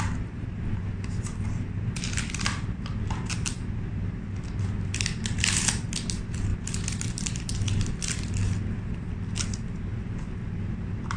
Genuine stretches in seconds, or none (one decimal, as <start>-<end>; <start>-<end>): 0.0-11.2